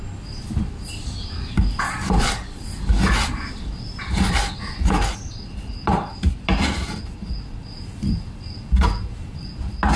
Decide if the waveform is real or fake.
real